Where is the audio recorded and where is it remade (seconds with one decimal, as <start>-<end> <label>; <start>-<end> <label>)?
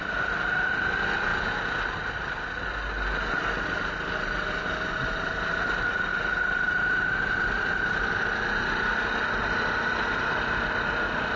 0.0-11.4 recorded